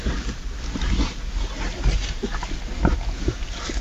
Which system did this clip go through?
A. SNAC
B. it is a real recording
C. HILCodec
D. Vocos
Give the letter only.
B